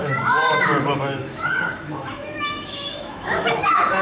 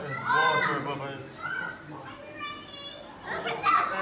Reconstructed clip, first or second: first